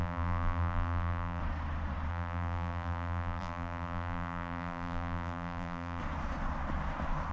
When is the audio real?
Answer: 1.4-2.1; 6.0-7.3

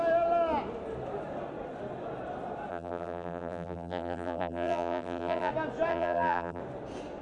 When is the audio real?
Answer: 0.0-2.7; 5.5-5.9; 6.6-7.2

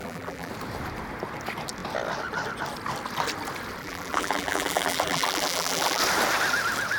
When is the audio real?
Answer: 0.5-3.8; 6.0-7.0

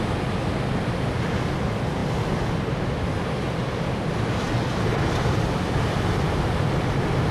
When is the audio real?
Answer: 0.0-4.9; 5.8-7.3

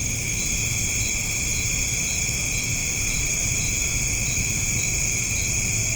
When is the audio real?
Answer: 0.0-0.6; 1.8-2.8; 3.3-6.0

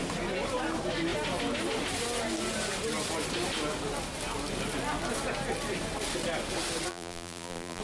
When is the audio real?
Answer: 0.0-6.9